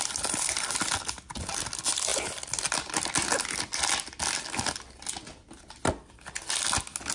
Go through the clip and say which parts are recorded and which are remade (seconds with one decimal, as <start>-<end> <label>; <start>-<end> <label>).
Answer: 0.0-7.1 recorded